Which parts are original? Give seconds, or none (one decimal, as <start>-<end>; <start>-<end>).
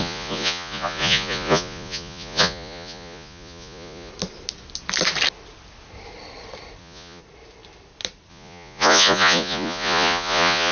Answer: 4.1-6.8; 7.2-8.3